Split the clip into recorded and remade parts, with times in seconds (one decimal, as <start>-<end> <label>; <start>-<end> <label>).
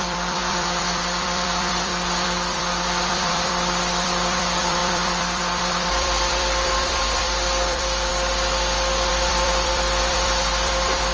0.0-8.1 remade; 8.1-9.1 recorded; 9.1-11.1 remade